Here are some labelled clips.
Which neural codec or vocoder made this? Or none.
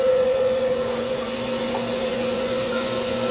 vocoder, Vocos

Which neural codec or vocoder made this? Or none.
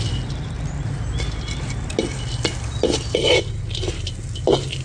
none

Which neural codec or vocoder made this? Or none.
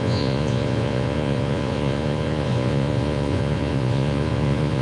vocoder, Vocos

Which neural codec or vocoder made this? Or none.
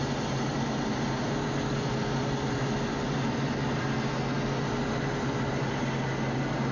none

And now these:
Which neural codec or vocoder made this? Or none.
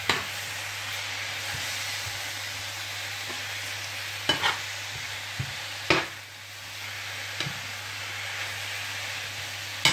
none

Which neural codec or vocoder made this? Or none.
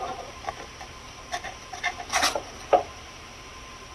none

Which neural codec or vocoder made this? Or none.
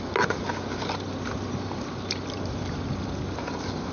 none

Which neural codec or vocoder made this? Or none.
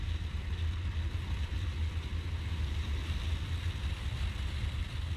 none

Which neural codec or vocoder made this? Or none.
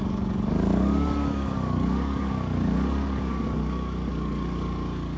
codec, DAC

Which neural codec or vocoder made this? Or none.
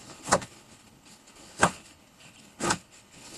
codec, HILCodec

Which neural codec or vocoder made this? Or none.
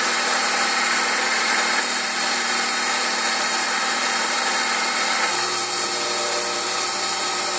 vocoder, BigVGAN v2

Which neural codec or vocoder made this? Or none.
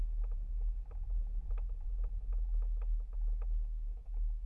none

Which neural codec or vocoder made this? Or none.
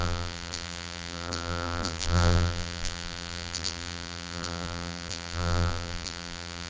vocoder, BigVGAN v2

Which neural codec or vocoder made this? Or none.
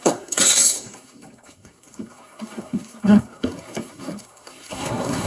codec, SNAC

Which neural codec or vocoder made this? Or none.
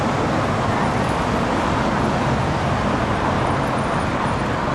none